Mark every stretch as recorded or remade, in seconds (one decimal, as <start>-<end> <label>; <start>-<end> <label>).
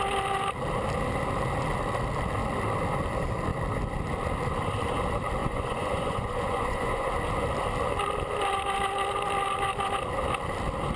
0.0-5.4 recorded; 5.4-7.1 remade; 7.1-11.0 recorded